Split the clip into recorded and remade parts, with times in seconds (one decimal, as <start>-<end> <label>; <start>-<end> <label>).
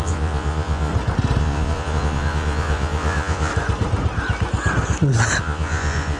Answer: 0.0-0.9 remade; 0.9-1.4 recorded; 1.4-3.5 remade; 3.5-5.4 recorded; 5.4-6.2 remade